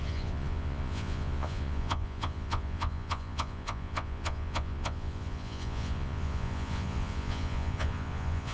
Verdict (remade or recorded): remade